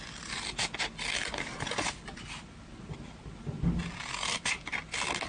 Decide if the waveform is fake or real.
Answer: real